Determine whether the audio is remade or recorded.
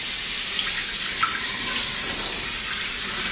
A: recorded